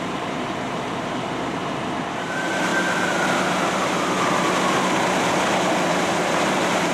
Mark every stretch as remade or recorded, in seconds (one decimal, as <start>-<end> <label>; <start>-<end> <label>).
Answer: 0.0-1.6 remade; 1.6-2.1 recorded; 2.1-2.7 remade; 2.7-6.3 recorded; 6.3-6.9 remade